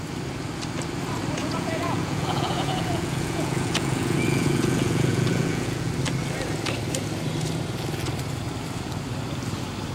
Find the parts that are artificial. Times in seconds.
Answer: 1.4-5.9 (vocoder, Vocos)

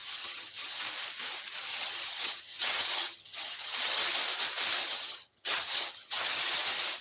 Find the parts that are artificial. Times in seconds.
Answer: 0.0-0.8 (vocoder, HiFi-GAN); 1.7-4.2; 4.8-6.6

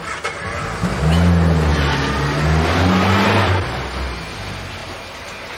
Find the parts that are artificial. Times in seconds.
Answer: none

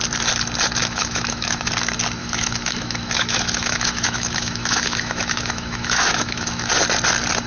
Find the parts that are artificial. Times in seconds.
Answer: 0.8-1.7 (autoencoder, DAC-VAE); 2.2-6.7

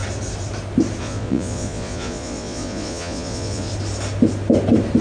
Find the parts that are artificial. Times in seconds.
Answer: 1.0-3.7 (vocoder, Vocos)

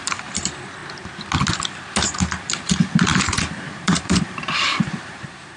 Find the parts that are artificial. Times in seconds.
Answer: 0.0-0.8 (vocoder, BigVGAN v2); 2.5-5.6